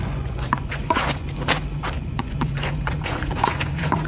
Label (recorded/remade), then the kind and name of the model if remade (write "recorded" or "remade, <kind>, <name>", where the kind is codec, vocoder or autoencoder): remade, vocoder, Vocos